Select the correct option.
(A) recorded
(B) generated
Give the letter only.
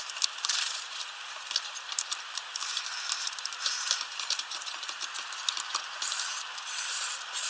B